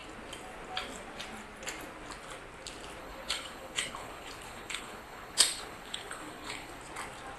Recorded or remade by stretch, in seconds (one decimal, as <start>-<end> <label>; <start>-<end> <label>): 0.0-3.0 recorded; 3.0-6.8 remade; 6.8-7.4 recorded